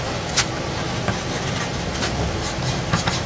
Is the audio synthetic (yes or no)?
no